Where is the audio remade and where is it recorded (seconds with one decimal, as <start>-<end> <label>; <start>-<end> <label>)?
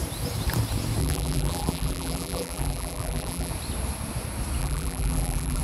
0.0-1.0 recorded; 1.0-3.5 remade; 3.5-4.6 recorded; 4.6-5.6 remade